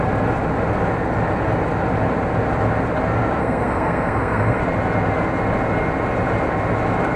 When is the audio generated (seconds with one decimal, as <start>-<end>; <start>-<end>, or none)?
3.4-4.6